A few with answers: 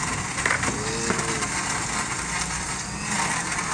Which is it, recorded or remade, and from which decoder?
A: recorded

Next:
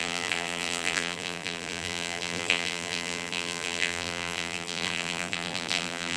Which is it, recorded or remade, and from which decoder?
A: remade, vocoder, BigVGAN v2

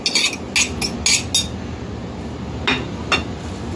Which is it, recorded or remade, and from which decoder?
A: recorded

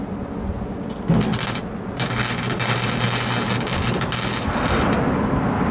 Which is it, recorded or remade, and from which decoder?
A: recorded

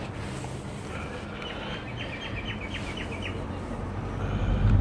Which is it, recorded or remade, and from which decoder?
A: remade, vocoder, BigVGAN v2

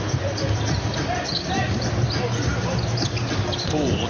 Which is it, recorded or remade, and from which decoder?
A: remade, vocoder, BigVGAN v2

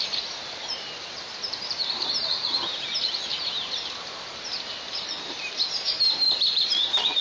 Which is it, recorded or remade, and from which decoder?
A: remade, vocoder, BigVGAN v2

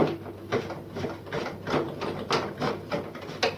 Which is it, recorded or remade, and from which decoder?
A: recorded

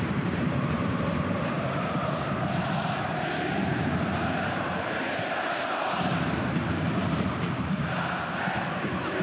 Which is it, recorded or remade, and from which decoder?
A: remade, vocoder, BigVGAN v2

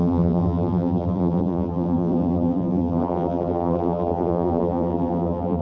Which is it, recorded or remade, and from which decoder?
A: remade, vocoder, BigVGAN v2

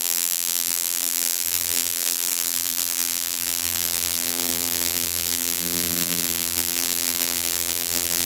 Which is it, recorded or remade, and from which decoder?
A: remade, vocoder, BigVGAN v2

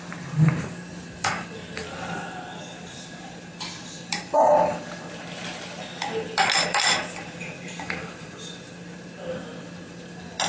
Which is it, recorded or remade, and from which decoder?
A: remade, vocoder, BigVGAN v2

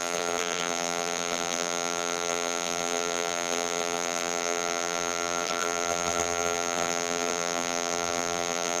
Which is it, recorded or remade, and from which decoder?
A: remade, vocoder, BigVGAN v2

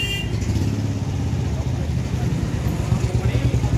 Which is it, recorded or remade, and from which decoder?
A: recorded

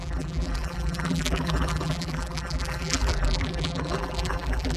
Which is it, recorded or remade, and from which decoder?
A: remade, vocoder, BigVGAN v2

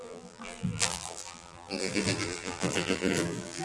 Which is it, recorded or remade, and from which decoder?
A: remade, vocoder, BigVGAN v2